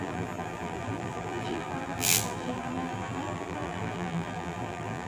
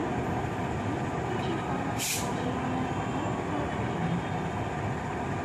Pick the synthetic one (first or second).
first